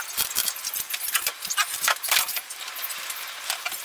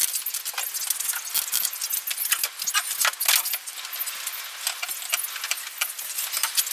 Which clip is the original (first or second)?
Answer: second